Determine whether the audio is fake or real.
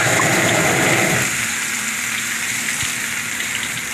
real